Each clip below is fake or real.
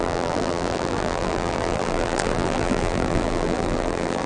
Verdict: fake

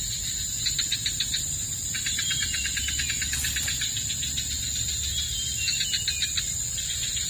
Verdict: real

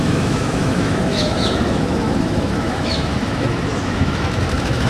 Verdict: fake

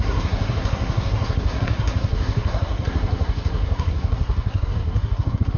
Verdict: fake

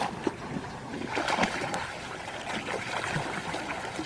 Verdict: real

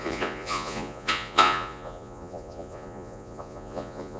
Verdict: fake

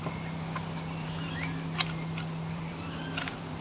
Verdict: fake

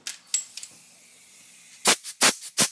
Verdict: real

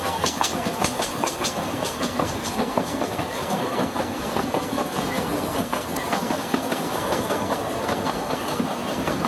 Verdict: fake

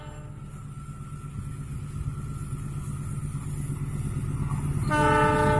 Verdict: real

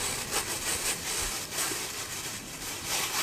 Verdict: fake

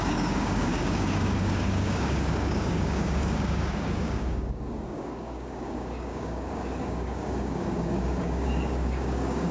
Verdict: fake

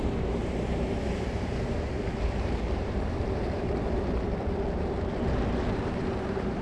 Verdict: fake